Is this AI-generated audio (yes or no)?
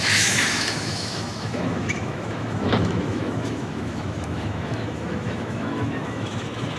yes